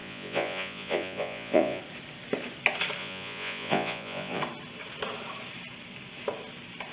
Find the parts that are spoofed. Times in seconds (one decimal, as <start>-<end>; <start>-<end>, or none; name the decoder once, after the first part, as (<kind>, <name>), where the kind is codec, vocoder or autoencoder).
0.0-1.8 (vocoder, Vocos); 3.0-4.4